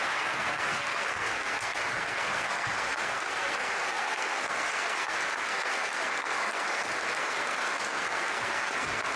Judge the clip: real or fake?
fake